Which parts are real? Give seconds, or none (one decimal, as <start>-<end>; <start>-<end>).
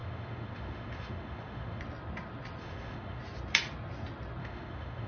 1.8-2.6; 3.2-4.4